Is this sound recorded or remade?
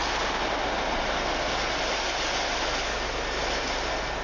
recorded